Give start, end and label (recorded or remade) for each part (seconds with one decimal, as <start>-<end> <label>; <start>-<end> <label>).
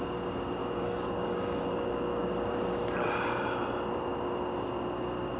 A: 0.0-0.6 recorded; 0.6-2.3 remade; 2.3-5.4 recorded